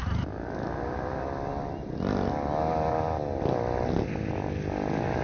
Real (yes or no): yes